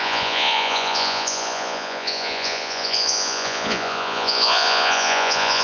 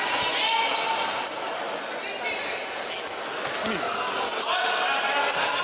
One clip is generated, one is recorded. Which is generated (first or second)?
first